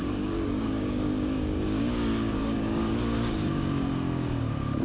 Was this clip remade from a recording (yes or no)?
yes